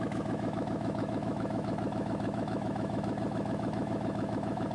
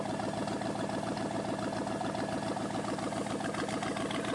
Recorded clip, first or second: second